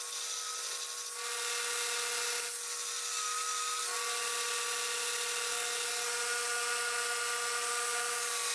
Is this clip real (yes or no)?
yes